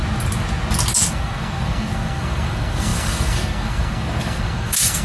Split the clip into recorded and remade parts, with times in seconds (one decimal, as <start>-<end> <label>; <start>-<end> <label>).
0.0-1.1 recorded; 1.1-5.0 remade